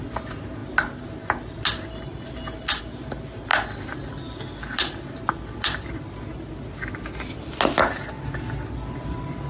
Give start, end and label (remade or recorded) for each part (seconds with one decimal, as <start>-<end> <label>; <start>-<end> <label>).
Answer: 0.0-9.5 recorded